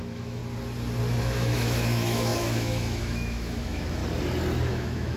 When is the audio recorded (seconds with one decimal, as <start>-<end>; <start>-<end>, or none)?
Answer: 0.4-1.2; 4.0-4.7